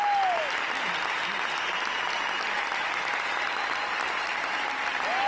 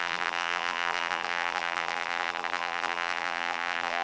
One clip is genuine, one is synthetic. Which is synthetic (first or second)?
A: second